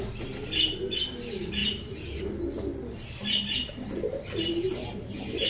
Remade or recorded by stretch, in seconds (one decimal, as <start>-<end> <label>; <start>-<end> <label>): 0.0-5.5 recorded